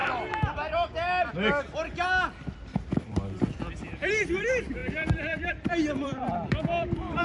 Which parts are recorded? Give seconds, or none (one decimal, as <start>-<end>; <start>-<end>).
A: 0.0-3.0